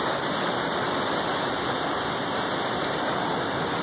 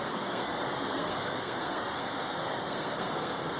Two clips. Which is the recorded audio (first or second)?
first